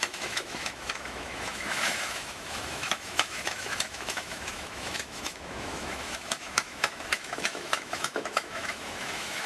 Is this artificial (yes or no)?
yes